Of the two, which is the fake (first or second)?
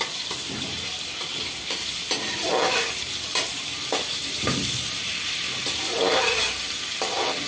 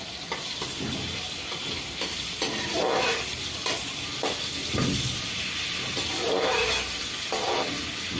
first